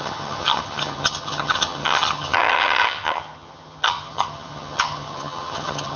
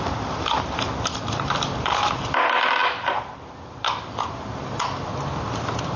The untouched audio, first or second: second